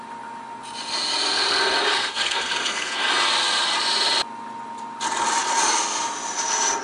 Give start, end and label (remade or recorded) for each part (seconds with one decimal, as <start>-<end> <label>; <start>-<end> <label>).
0.0-1.9 recorded; 1.9-3.0 remade; 3.0-6.8 recorded